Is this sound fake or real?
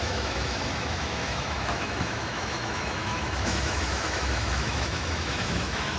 fake